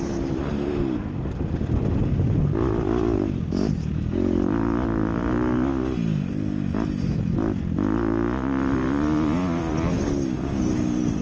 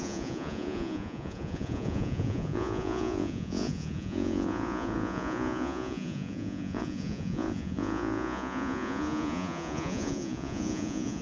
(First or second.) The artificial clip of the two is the second